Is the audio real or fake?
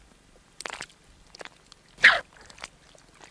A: real